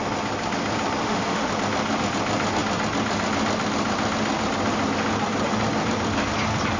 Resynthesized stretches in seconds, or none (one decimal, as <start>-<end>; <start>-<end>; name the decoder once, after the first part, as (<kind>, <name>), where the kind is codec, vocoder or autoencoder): 1.0-1.5 (autoencoder, DAC-VAE)